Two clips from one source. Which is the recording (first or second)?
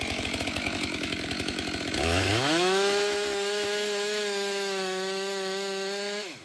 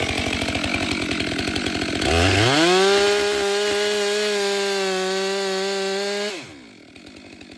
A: second